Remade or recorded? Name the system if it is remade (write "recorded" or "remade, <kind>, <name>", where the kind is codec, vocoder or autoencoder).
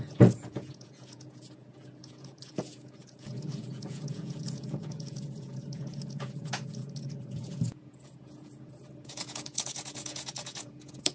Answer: remade, vocoder, Vocos